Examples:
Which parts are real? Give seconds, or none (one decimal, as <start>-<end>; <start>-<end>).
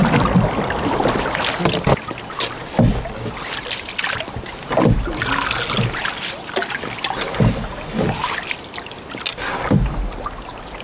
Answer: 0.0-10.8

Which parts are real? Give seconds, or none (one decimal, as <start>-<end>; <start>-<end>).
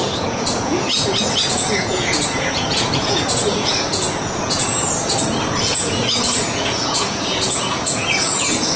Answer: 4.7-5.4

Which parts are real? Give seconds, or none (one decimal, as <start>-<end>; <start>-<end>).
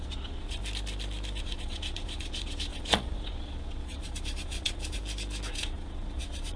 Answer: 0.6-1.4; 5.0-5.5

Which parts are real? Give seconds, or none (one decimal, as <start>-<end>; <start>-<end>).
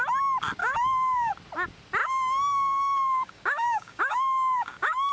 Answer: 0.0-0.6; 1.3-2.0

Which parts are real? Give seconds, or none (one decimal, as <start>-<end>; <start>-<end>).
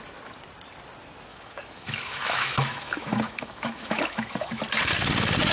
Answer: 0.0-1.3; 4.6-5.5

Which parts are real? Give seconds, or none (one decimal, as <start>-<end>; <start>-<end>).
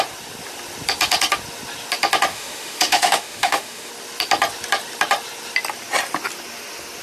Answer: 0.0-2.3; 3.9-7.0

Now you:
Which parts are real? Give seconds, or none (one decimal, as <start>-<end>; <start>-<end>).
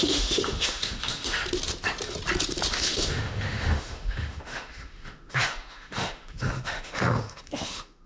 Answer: 1.4-2.7